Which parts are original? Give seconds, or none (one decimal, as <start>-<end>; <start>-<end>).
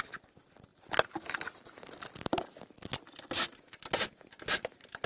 0.0-5.1